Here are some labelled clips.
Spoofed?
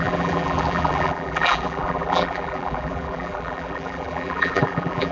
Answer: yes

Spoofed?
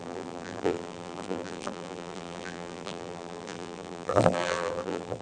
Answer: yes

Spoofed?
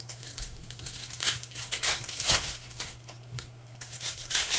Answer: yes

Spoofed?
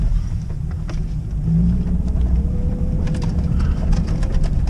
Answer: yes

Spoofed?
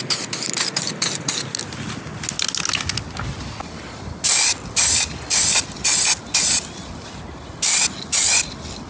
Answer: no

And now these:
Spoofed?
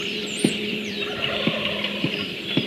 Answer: yes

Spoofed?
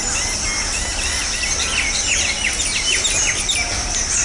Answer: no